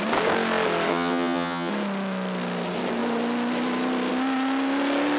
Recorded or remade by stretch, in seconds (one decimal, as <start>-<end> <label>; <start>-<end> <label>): 0.0-0.9 recorded; 0.9-1.7 remade; 1.7-5.2 recorded